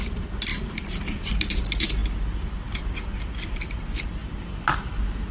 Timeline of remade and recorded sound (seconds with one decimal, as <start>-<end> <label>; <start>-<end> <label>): 0.0-5.3 recorded